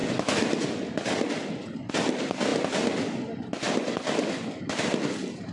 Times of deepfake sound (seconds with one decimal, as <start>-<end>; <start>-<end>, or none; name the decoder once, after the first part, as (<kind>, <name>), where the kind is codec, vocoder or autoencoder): none